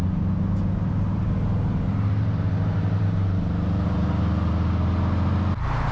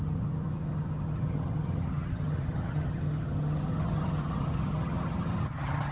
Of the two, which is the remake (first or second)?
second